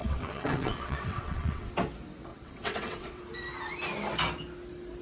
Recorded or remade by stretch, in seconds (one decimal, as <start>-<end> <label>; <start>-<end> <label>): 0.0-1.7 remade; 1.7-2.3 recorded; 2.3-3.2 remade; 3.2-5.0 recorded